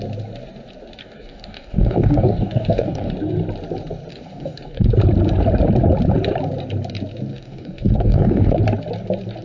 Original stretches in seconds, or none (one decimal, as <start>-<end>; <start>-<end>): 0.0-1.0; 3.1-4.1; 4.9-7.3; 8.6-9.4